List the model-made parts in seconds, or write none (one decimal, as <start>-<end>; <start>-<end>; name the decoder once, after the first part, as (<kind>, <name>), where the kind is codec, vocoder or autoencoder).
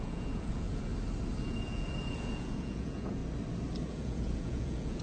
0.0-0.9 (vocoder, Vocos); 1.4-3.2; 3.9-5.0